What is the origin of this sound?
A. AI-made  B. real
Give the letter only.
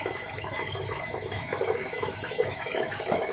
A